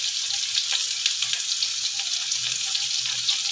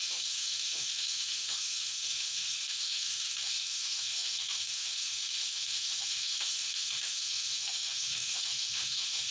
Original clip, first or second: first